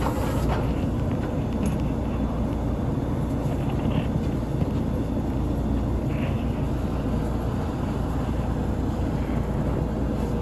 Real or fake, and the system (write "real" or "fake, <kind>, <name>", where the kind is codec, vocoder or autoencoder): real